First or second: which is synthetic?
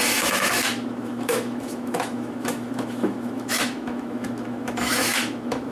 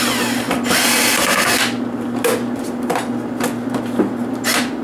first